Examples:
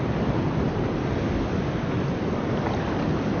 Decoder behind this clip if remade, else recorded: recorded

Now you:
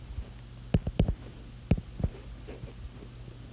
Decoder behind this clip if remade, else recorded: recorded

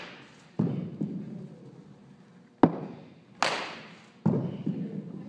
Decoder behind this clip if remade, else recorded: recorded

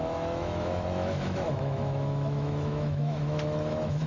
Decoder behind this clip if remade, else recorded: remade, autoencoder, DAC-VAE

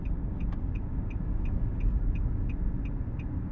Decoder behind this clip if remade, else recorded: recorded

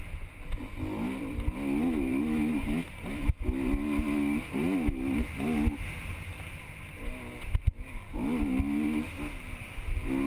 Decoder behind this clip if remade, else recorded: recorded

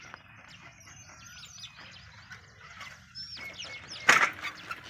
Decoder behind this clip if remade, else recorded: recorded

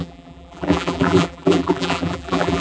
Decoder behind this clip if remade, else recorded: remade, vocoder, BigVGAN v2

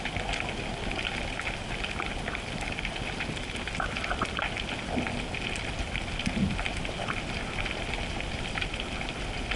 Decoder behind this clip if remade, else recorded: recorded